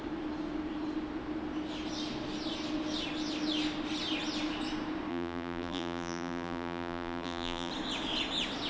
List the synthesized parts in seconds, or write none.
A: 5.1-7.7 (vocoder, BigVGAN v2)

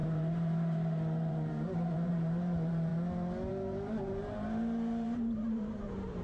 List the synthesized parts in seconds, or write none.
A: 0.0-2.9 (vocoder, BigVGAN v2); 3.5-6.2

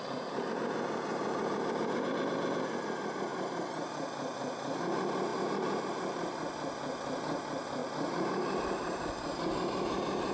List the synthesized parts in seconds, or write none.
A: 1.1-1.7 (vocoder, BigVGAN v2); 7.8-9.0

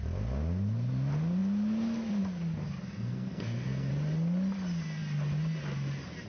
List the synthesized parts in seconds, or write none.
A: 2.8-3.9 (codec, SNAC)

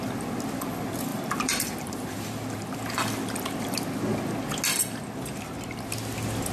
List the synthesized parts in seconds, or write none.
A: 1.1-2.6 (vocoder, BigVGAN v2)

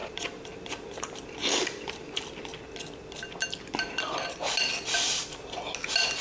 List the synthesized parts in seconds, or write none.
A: 0.0-2.5 (vocoder, BigVGAN v2)

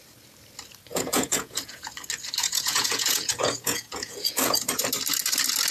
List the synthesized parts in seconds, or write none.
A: 0.9-1.9 (vocoder, Vocos); 2.4-4.8

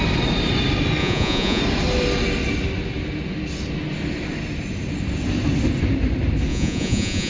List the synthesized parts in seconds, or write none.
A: 1.0-1.6 (vocoder, Vocos); 6.5-7.3